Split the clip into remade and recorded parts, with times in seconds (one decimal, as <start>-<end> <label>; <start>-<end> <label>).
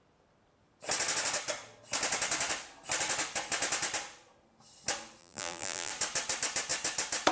0.0-5.2 recorded; 5.2-5.9 remade; 5.9-7.3 recorded